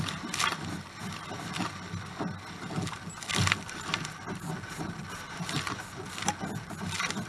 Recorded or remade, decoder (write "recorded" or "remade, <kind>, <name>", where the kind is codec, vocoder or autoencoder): recorded